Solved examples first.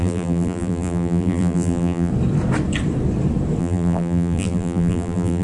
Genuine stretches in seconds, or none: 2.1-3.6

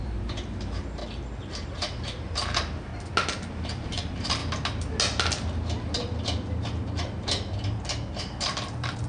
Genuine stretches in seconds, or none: 1.0-1.7; 2.9-3.5; 4.4-8.2

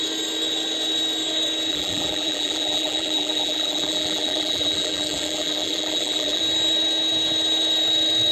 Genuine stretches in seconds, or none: 0.0-1.7; 6.4-8.3

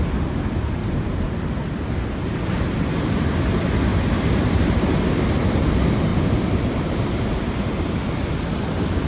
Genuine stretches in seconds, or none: 0.0-0.8; 1.3-3.9; 4.8-6.1; 7.9-9.1